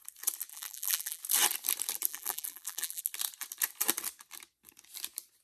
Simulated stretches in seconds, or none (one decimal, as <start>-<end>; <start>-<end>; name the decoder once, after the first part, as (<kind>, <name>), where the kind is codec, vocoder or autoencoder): 0.5-1.2 (vocoder, BigVGAN v2); 2.1-3.0